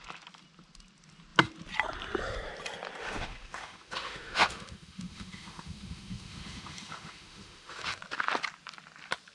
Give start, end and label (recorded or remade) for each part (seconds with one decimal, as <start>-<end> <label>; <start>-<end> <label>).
0.0-3.0 recorded; 3.0-8.0 remade; 8.0-9.3 recorded